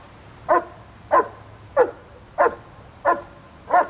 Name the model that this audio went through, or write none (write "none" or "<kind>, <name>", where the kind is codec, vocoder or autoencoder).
none